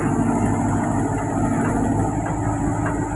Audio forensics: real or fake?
real